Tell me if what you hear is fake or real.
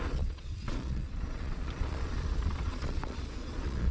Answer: fake